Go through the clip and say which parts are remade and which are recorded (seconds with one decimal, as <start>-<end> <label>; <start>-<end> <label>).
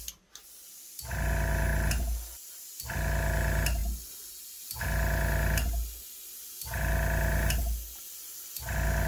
0.0-9.1 recorded